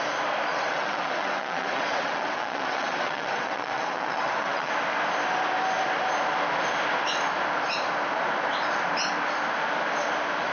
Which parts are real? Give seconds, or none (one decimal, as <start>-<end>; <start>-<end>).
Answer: 0.0-0.5; 4.7-10.5